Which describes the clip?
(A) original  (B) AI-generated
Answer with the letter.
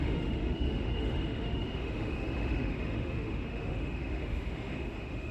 B